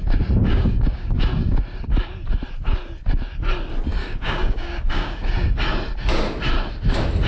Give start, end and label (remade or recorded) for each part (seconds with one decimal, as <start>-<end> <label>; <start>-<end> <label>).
0.0-0.5 recorded; 0.5-1.2 remade; 1.2-4.0 recorded; 4.0-5.3 remade; 5.3-7.3 recorded

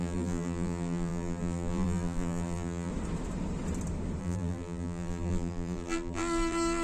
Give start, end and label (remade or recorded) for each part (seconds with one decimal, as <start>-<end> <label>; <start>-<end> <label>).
0.0-2.9 remade; 2.9-4.2 recorded; 4.2-6.8 remade

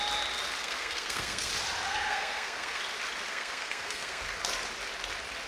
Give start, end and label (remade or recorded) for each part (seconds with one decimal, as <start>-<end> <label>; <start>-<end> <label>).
0.0-0.6 recorded; 0.6-1.5 remade; 1.5-1.9 recorded; 1.9-2.8 remade; 2.8-3.3 recorded; 3.3-4.2 remade; 4.2-5.5 recorded